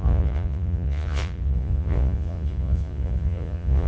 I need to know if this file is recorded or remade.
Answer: remade